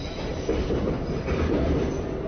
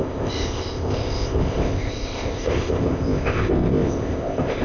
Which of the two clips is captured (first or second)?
first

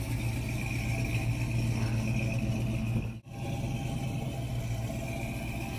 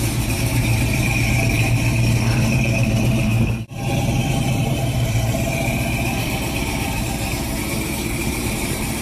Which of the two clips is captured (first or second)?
first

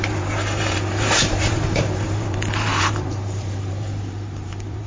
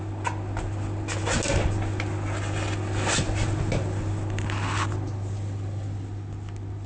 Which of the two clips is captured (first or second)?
second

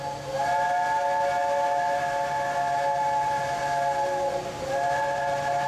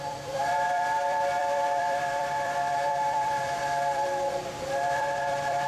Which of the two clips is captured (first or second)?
first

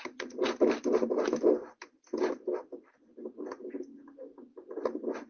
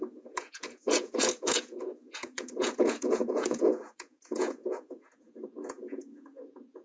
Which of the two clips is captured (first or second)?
first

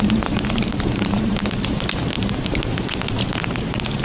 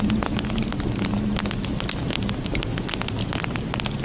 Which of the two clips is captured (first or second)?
second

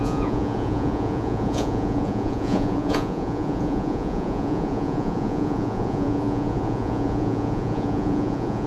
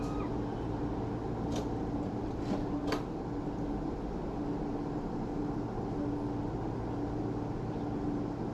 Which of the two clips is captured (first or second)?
second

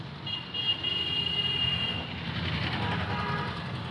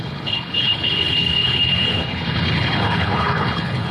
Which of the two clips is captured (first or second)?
first